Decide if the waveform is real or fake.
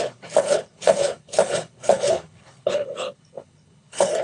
fake